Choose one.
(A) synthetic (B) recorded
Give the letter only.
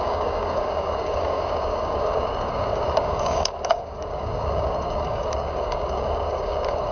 A